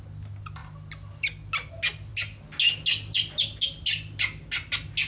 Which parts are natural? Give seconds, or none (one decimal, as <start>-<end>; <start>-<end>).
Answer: 0.0-5.1